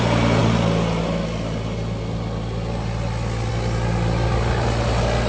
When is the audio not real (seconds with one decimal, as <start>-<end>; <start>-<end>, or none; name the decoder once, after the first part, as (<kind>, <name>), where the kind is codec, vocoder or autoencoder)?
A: none